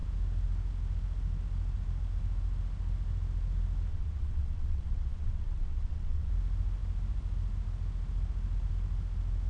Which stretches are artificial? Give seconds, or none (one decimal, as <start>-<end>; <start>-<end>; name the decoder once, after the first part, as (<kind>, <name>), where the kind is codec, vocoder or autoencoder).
3.9-6.3 (vocoder, WaveNeXt)